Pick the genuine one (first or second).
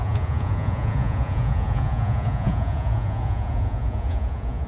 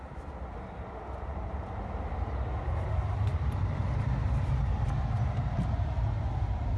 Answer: second